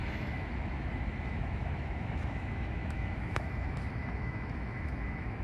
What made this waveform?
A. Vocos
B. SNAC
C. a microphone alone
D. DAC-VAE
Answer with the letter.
D